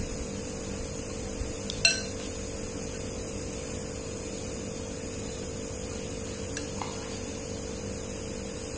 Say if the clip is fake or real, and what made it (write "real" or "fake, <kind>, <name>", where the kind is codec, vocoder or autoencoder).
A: real